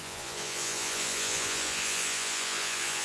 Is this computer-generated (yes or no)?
yes